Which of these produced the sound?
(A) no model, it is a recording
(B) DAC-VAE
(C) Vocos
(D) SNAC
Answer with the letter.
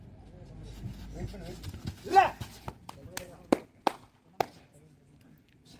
A